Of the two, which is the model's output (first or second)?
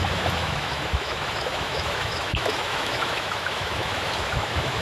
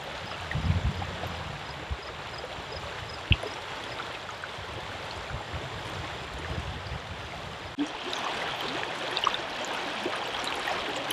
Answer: first